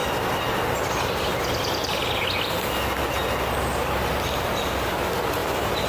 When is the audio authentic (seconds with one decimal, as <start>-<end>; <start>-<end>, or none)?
0.0-5.9